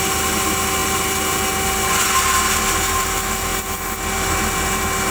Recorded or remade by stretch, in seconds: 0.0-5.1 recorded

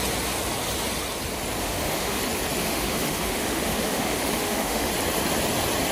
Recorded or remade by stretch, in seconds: 0.0-1.6 recorded; 1.6-2.2 remade; 2.2-2.6 recorded; 2.6-4.9 remade; 4.9-5.9 recorded

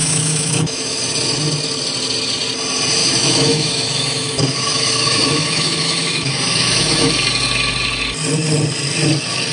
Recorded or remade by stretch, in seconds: 0.0-1.0 remade; 1.0-3.0 recorded; 3.0-7.1 remade; 7.1-9.5 recorded

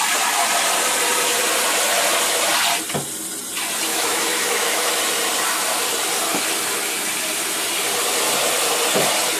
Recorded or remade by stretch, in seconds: 0.0-3.9 recorded; 3.9-5.0 remade; 5.0-9.4 recorded

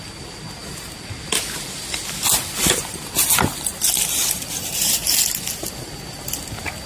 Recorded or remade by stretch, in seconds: 0.0-6.9 recorded

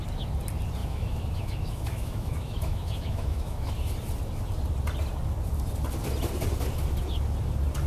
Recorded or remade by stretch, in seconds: 0.0-0.8 recorded; 0.8-3.7 remade; 3.7-7.9 recorded

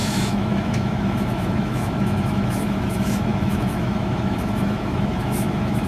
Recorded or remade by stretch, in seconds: 0.0-5.9 remade